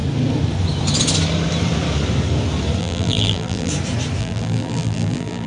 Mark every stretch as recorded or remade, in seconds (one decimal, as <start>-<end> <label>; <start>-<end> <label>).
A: 0.0-2.8 recorded; 2.8-3.7 remade; 3.7-4.2 recorded; 4.2-5.5 remade